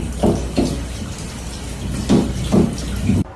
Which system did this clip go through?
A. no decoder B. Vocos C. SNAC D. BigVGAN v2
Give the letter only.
A